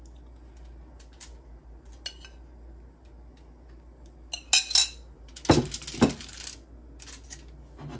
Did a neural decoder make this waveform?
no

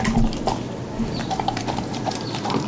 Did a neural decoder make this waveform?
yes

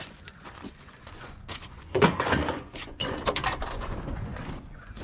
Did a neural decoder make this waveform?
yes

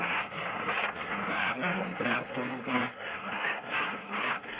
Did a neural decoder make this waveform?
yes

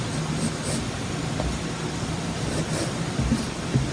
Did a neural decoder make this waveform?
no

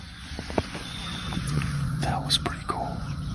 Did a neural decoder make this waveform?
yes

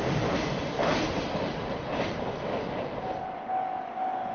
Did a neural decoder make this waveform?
no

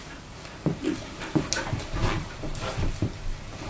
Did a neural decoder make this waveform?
no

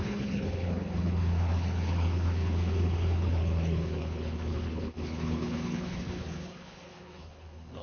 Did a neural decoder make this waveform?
yes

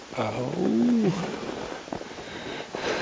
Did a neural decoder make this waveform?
no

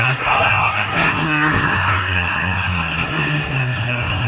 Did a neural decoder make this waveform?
yes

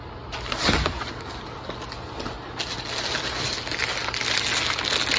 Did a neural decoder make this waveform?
no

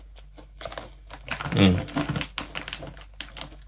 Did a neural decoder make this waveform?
no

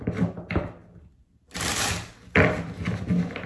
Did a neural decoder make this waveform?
no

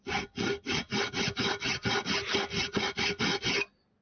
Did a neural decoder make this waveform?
no